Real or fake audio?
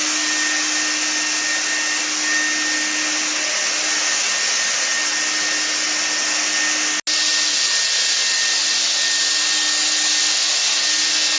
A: real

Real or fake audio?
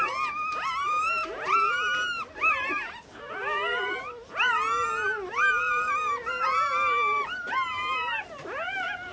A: real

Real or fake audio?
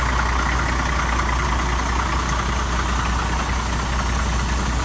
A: real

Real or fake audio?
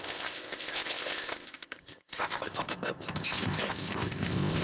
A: fake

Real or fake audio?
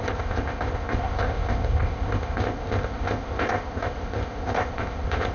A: fake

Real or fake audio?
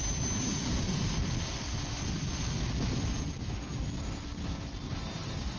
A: real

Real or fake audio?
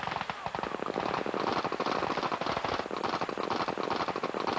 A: real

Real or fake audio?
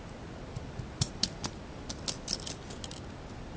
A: real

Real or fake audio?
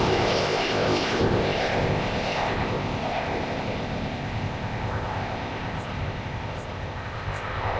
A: fake